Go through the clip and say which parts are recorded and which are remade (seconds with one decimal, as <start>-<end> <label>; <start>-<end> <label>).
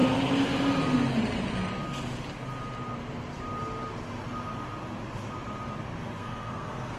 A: 0.0-6.2 recorded; 6.2-7.0 remade